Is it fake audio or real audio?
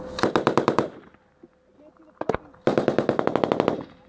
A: real